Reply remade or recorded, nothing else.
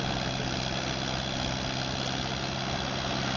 recorded